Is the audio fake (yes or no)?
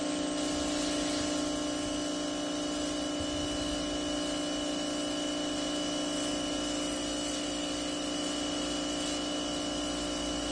no